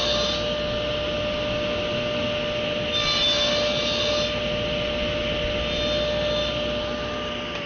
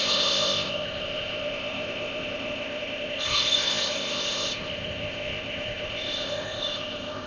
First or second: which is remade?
second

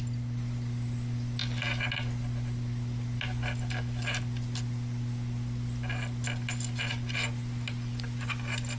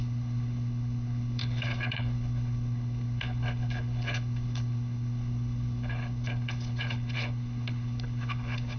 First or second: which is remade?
second